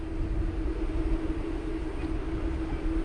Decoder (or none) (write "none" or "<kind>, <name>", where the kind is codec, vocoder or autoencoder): none